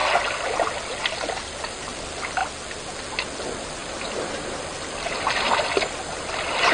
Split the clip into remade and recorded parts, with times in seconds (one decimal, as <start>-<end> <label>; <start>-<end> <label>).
0.0-3.8 recorded; 3.8-4.6 remade; 4.6-6.7 recorded